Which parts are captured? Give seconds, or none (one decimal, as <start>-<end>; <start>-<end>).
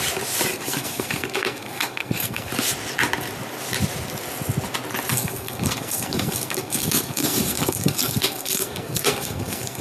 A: 0.0-0.5; 2.5-5.1